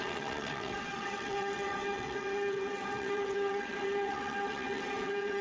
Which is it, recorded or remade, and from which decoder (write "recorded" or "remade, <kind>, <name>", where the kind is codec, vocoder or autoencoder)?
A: remade, vocoder, WaveNeXt